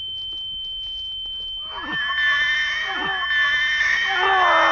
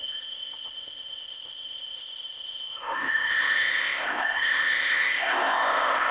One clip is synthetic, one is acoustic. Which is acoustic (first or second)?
first